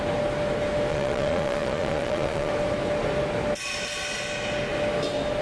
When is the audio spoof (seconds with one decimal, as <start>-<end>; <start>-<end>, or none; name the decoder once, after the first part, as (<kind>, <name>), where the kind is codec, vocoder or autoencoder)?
0.9-2.5 (vocoder, Vocos)